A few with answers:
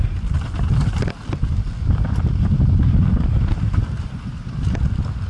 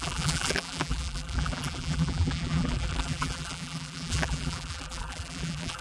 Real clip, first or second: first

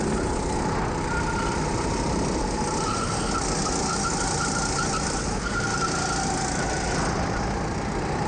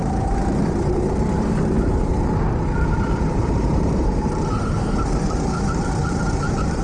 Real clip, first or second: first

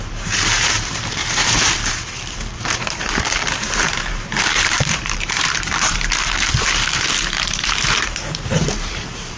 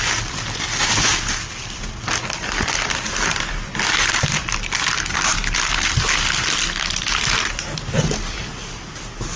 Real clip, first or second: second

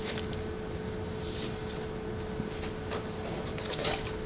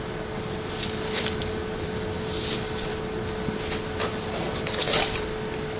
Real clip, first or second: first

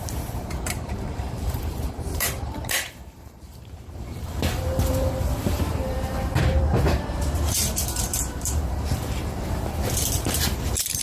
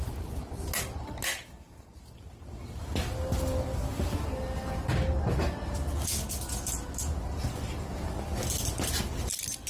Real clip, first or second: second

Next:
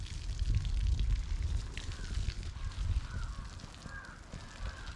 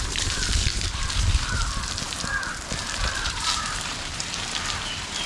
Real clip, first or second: first